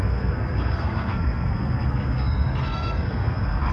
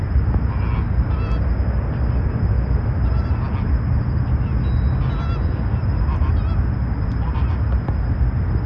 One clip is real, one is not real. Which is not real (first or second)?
first